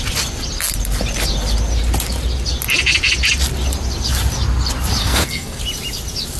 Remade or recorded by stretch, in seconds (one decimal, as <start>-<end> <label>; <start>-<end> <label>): 0.0-5.0 recorded; 5.0-5.6 remade; 5.6-6.4 recorded